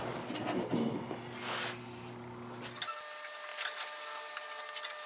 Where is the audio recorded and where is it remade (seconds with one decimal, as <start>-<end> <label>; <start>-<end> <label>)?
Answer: 0.0-5.1 recorded